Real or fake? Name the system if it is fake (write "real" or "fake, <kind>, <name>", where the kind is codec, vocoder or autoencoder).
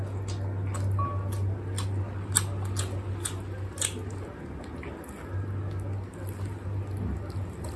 real